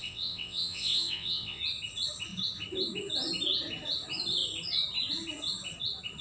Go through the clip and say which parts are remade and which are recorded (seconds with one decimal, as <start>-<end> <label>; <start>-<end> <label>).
0.0-1.6 remade; 1.6-6.2 recorded